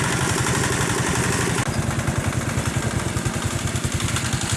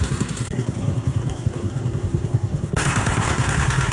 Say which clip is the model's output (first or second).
second